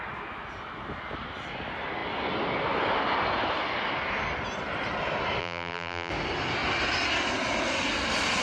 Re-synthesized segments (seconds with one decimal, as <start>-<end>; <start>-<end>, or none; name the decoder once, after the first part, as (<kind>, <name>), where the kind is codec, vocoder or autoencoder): 5.4-6.1 (vocoder, BigVGAN v2)